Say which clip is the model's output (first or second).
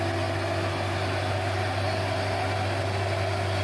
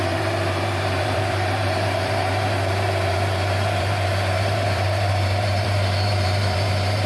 second